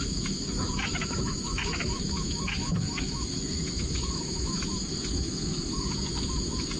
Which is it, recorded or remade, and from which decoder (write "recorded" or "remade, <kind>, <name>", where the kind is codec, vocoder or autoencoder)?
remade, autoencoder, DAC-VAE